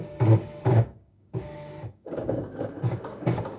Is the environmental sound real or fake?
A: fake